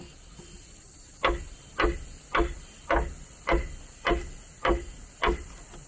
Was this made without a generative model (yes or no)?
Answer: yes